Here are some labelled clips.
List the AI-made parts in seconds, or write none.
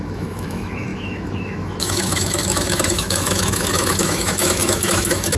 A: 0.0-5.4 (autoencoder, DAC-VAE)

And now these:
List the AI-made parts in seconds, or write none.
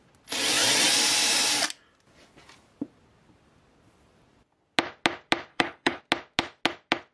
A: 5.5-6.0 (codec, HILCodec)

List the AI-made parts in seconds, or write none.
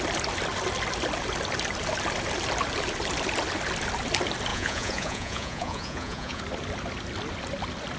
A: 4.5-6.4 (vocoder, Vocos)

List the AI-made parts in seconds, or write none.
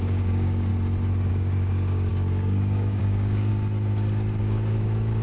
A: 0.0-0.7 (codec, DAC); 1.3-3.5; 4.4-5.2